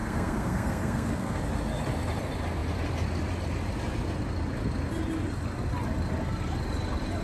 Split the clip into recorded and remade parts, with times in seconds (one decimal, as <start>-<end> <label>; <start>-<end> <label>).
0.0-1.4 remade; 1.4-7.2 recorded